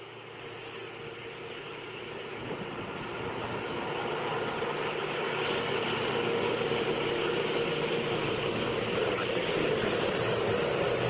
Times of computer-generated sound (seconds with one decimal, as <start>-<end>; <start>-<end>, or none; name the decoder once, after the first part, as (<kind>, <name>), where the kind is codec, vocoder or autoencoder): none